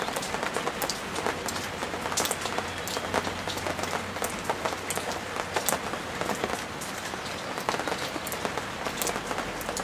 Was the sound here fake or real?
real